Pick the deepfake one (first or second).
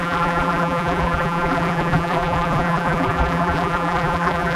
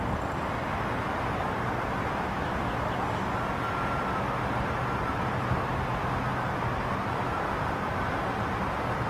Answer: first